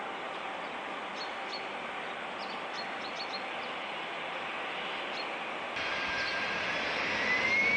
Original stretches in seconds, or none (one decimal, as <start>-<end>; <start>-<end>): 0.0-7.8